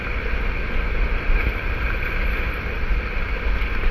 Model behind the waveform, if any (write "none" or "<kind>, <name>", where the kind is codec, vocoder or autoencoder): none